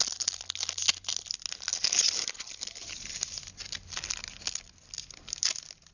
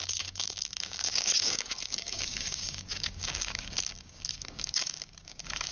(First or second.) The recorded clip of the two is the first